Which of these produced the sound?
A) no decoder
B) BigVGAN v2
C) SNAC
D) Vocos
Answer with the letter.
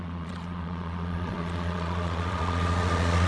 D